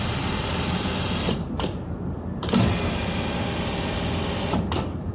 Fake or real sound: fake